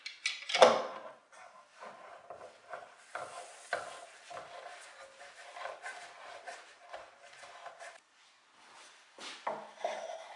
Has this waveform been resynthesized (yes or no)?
no